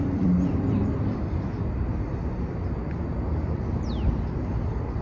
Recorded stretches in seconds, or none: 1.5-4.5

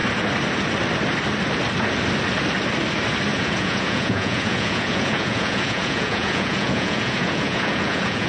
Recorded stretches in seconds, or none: 0.0-3.3

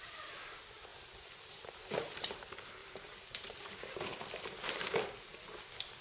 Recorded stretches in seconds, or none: 0.0-0.9; 2.3-2.8; 3.7-6.0

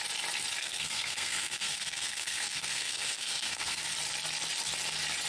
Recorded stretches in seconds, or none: 0.0-0.6; 3.8-5.3

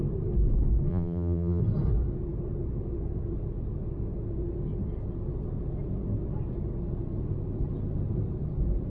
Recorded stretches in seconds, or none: 0.0-0.9; 1.6-8.9